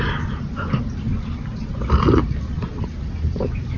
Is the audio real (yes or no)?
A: yes